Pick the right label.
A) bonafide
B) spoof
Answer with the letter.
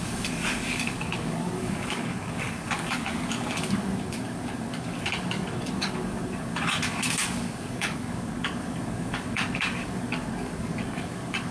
B